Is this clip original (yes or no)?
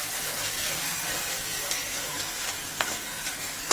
no